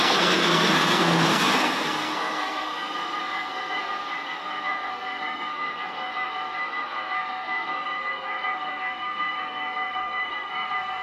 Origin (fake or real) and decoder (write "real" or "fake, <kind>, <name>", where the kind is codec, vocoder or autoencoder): fake, codec, SNAC